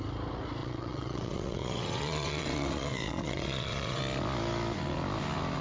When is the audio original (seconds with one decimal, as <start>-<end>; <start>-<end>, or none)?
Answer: 0.0-0.6; 4.0-5.6